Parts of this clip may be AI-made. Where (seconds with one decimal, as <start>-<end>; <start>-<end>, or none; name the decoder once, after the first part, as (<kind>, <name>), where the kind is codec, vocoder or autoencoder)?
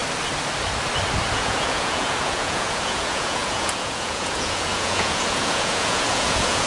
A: 1.3-6.7 (vocoder, Vocos)